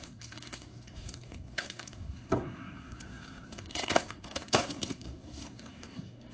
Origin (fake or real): fake